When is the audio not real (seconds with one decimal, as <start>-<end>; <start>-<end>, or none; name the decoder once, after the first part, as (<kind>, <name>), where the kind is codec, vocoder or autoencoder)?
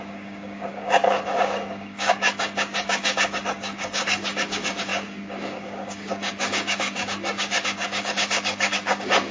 0.0-9.3 (codec, DAC)